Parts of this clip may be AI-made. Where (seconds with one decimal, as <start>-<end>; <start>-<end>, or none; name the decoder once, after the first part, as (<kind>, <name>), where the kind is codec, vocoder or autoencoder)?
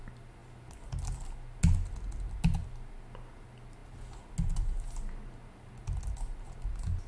none